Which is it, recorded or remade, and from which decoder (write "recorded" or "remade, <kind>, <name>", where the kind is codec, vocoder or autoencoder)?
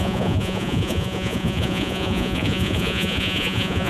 remade, vocoder, Vocos